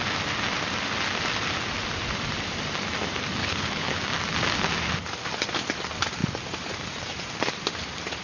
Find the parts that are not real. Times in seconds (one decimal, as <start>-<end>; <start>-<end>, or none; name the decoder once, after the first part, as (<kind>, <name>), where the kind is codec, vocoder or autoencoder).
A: 3.4-4.0 (codec, HILCodec)